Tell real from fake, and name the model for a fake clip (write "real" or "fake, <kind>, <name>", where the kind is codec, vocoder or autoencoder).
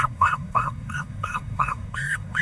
fake, codec, SNAC